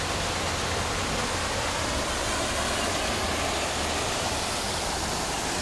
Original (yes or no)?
yes